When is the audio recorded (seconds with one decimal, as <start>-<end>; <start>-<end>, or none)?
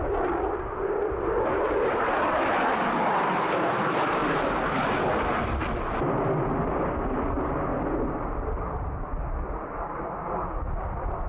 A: 0.0-11.3